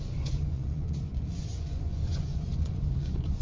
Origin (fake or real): fake